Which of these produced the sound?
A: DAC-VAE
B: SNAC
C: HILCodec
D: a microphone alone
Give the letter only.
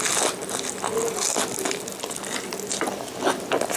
D